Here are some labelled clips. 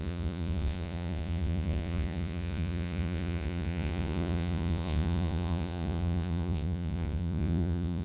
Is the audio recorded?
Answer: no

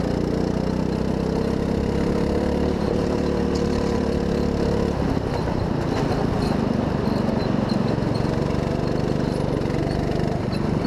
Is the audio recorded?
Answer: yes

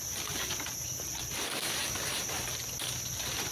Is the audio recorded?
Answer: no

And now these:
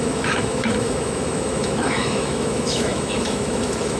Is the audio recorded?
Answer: no